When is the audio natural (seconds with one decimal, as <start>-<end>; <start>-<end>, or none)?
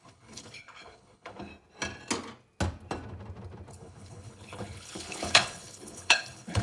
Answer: 1.5-3.7